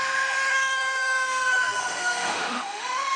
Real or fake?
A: fake